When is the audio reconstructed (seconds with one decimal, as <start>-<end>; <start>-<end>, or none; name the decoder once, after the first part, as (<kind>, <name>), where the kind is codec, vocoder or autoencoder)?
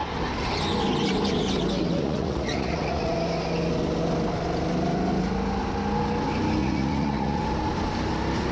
2.0-3.1 (vocoder, Vocos); 6.6-7.4